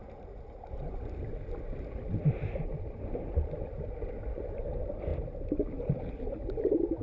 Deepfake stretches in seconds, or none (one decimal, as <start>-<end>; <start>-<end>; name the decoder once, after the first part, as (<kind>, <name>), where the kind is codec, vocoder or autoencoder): 0.0-0.8 (vocoder, BigVGAN v2); 5.1-6.1